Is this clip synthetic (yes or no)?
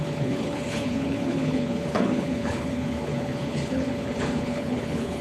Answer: yes